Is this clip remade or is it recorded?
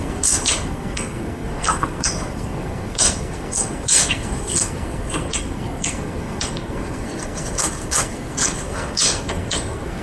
remade